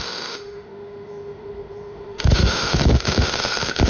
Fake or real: fake